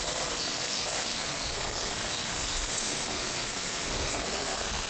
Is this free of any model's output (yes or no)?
no